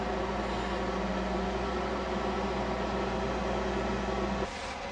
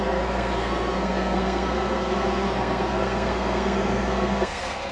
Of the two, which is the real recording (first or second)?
first